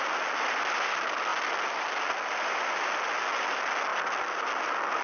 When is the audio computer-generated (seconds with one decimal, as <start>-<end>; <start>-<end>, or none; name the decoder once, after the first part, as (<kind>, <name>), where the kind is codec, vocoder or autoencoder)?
none